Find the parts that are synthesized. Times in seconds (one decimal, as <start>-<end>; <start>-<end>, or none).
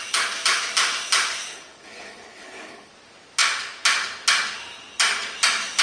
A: 1.5-2.9